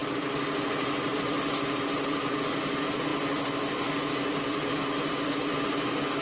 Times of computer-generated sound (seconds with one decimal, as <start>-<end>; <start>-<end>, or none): none